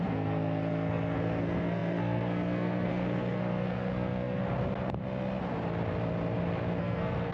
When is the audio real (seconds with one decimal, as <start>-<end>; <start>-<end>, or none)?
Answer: 4.4-6.8